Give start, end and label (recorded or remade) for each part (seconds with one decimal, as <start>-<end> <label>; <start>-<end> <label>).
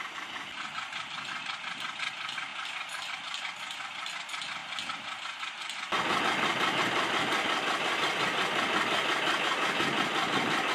0.0-10.7 recorded